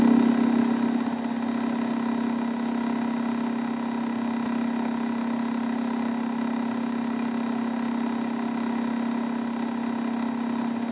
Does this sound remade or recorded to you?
recorded